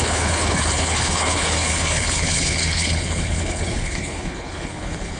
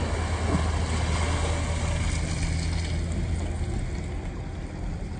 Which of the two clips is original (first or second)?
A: second